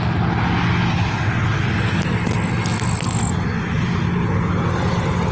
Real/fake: real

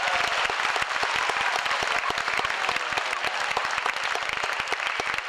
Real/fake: real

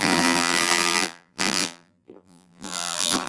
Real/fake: fake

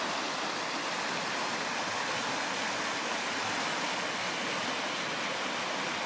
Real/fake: real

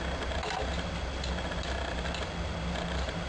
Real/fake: real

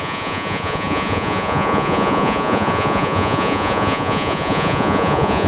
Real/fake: fake